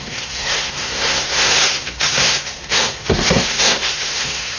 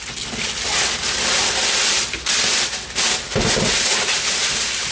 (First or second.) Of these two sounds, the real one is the second